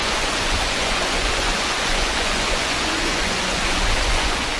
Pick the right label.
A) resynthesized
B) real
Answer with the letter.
A